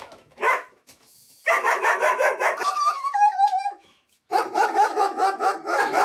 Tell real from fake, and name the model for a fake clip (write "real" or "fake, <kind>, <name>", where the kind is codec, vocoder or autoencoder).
fake, autoencoder, DAC-VAE